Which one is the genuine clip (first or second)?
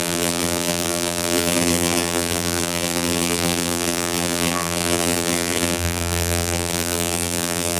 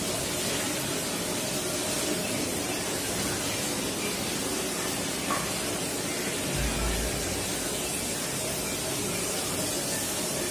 second